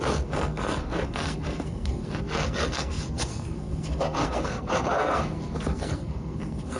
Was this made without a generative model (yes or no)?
no